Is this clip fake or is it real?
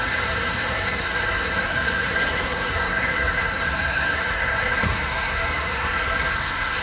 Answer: fake